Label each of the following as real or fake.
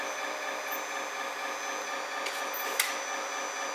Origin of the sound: real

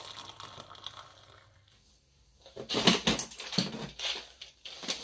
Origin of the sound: real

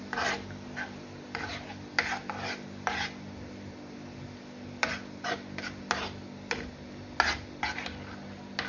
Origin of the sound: real